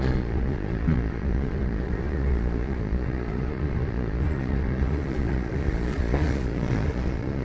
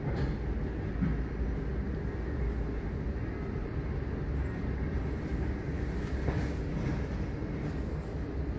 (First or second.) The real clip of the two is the second